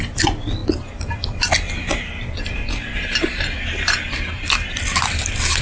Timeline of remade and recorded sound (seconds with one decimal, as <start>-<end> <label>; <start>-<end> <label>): 0.0-3.2 recorded; 3.2-5.6 remade